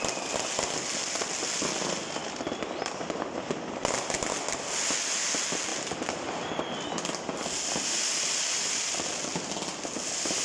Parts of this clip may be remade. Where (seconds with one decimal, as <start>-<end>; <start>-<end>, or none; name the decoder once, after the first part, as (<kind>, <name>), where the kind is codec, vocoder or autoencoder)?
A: none